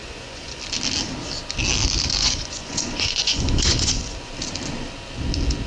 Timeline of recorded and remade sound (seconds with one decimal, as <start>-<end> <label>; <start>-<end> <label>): 0.0-0.6 remade; 0.6-2.2 recorded; 2.2-4.3 remade; 4.3-5.7 recorded